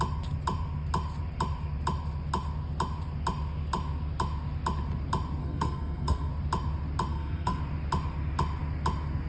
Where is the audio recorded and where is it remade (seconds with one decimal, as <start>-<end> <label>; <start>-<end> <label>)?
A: 0.0-5.4 recorded; 5.4-6.3 remade; 6.3-7.1 recorded; 7.1-7.6 remade; 7.6-9.3 recorded